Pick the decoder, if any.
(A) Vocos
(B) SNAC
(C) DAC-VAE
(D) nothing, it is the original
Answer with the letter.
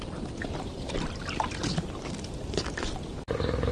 D